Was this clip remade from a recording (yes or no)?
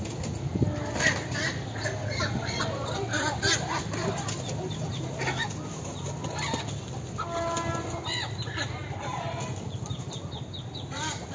no